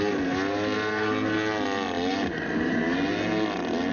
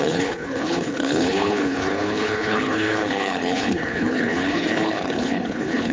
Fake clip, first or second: second